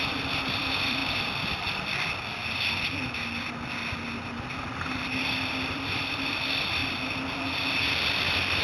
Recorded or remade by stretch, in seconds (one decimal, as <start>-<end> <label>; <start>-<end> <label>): 0.0-1.0 remade; 1.0-5.5 recorded; 5.5-6.8 remade; 6.8-7.8 recorded; 7.8-8.6 remade